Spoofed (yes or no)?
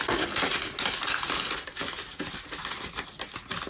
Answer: no